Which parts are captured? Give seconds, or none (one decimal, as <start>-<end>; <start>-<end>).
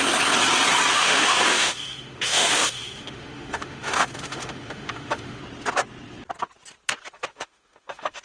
0.0-0.9; 5.4-7.3